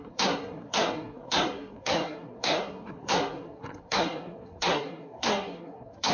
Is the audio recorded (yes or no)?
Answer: no